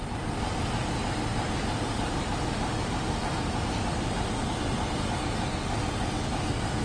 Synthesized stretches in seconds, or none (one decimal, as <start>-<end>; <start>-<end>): 1.3-5.2